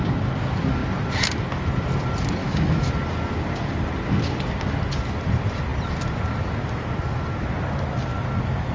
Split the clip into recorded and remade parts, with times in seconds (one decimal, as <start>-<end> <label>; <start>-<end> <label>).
0.0-2.4 recorded; 2.4-2.9 remade; 2.9-8.7 recorded